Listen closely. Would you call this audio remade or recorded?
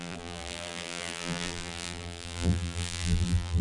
remade